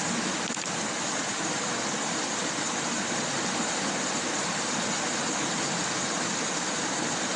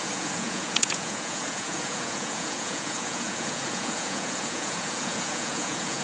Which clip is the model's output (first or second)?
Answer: second